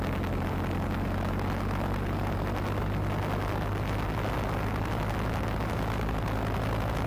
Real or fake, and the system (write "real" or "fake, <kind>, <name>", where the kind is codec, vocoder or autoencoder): real